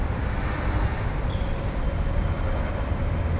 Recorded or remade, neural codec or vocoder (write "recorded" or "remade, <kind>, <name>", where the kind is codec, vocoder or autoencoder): recorded